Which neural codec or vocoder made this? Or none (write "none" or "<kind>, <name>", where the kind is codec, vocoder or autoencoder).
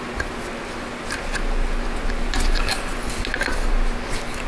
none